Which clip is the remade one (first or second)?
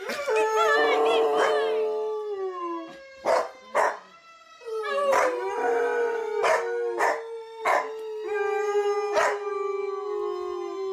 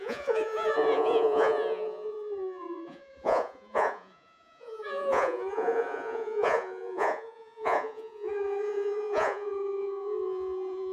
second